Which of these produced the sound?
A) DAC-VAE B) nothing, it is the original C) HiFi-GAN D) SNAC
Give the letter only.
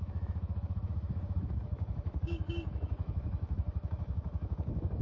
A